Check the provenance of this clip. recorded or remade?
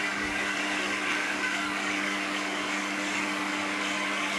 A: remade